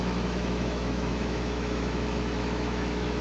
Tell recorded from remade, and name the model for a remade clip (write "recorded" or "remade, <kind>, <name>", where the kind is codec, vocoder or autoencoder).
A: remade, autoencoder, DAC-VAE